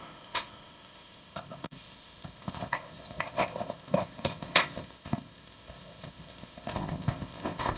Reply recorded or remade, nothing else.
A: remade